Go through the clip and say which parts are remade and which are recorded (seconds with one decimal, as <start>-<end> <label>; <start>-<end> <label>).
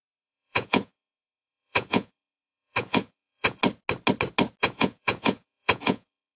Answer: 0.0-3.6 remade; 3.6-4.6 recorded; 4.6-6.4 remade